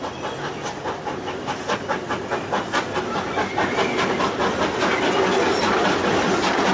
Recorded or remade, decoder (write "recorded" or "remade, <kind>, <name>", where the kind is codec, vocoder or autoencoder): recorded